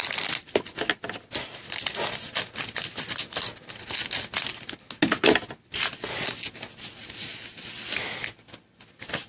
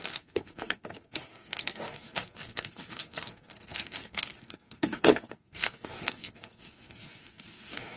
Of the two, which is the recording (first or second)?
first